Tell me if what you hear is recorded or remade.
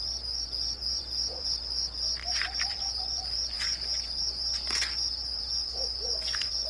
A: remade